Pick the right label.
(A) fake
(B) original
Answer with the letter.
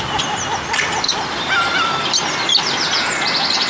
B